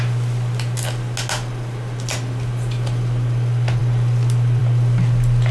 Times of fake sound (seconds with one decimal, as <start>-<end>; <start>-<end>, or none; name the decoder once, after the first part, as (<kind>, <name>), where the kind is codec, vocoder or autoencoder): none